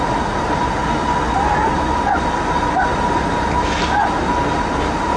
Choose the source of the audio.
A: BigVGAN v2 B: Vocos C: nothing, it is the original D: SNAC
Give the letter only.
C